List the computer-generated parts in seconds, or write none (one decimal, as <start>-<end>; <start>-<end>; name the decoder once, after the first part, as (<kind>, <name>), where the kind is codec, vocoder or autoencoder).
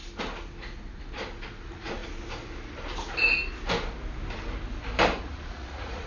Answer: 1.6-2.0 (vocoder, Vocos); 5.2-6.1